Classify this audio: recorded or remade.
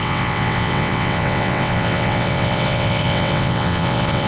remade